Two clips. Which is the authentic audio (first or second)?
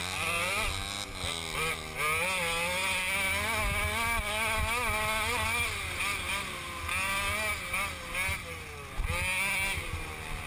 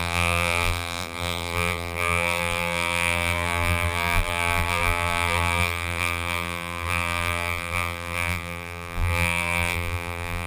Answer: first